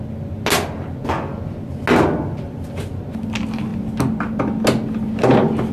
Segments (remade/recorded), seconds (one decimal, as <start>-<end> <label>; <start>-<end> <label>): 0.0-5.7 recorded